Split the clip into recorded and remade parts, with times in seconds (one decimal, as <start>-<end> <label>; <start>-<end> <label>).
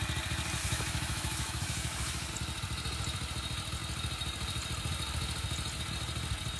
0.0-0.6 recorded; 0.6-2.3 remade; 2.3-6.6 recorded